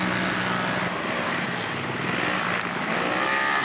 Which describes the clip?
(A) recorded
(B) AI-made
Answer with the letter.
A